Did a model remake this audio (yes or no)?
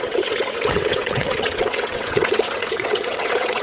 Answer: yes